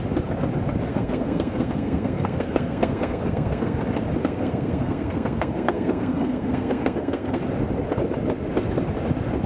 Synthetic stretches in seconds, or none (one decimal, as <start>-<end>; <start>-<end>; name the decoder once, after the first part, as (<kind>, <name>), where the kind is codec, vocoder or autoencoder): 0.9-3.8 (codec, SNAC); 4.2-7.4